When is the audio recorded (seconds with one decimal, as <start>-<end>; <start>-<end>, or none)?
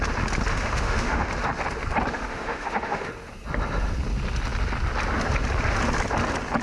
0.0-0.5; 1.3-2.1; 3.1-6.6